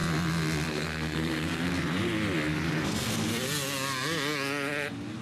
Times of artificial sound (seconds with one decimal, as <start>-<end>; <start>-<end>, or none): 0.7-1.7; 2.7-3.3